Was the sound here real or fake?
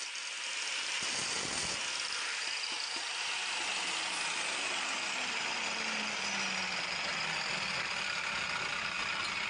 real